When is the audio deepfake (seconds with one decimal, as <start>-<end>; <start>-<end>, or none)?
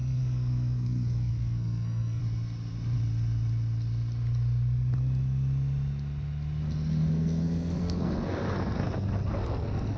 0.0-2.2; 7.1-10.0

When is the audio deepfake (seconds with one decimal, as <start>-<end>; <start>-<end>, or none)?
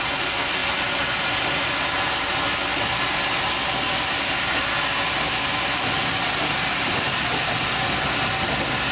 0.6-1.2